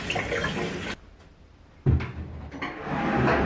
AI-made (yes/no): no